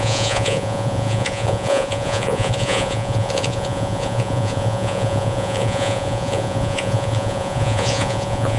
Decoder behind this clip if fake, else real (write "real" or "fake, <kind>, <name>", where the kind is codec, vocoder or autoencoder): fake, vocoder, Vocos